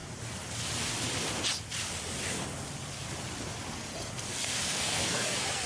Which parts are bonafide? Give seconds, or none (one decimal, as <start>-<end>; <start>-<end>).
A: 0.0-4.3